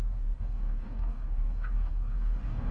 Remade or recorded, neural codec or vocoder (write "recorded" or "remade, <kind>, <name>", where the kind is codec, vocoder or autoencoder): remade, codec, DAC